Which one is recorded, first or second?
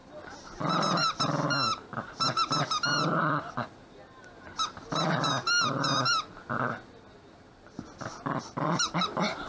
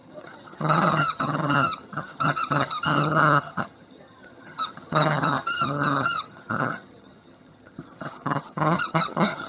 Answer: first